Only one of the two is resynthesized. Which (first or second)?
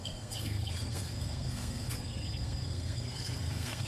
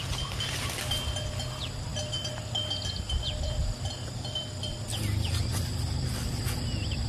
first